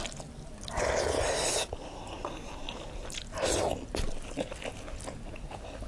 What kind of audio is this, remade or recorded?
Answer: recorded